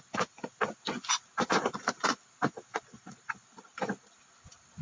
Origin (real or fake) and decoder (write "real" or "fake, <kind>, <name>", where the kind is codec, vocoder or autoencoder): real